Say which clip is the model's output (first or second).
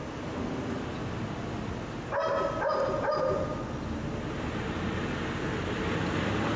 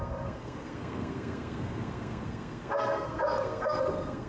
second